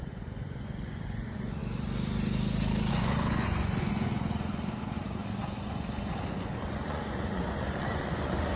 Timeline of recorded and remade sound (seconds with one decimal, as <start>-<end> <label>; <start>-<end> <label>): 0.0-1.6 remade; 1.6-2.9 recorded; 2.9-8.6 remade

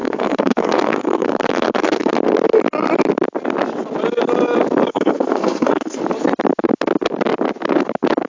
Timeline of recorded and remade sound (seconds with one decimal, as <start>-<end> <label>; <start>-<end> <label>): 0.0-2.1 remade; 2.1-4.9 recorded; 4.9-6.0 remade; 6.0-8.3 recorded

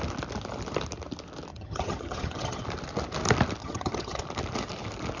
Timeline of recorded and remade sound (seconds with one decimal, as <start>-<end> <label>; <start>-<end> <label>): 0.0-1.5 recorded; 1.5-2.6 remade; 2.6-3.6 recorded; 3.6-4.2 remade; 4.2-5.2 recorded

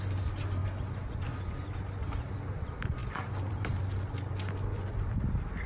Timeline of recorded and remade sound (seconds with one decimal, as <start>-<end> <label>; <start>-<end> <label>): 0.0-3.0 recorded; 3.0-3.8 remade; 3.8-5.7 recorded

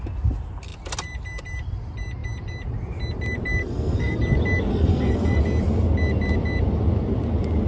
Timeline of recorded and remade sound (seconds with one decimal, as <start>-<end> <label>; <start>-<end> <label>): 0.0-3.6 recorded; 3.6-4.2 remade; 4.2-4.7 recorded; 4.7-5.4 remade; 5.4-7.7 recorded